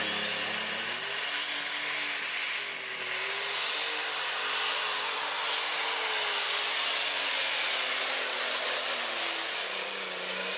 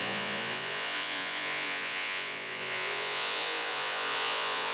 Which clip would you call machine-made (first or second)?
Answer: second